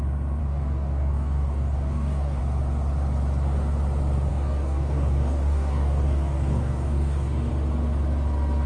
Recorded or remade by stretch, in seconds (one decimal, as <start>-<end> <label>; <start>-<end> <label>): 0.0-0.4 recorded; 0.4-2.4 remade; 2.4-4.3 recorded; 4.3-7.5 remade; 7.5-8.7 recorded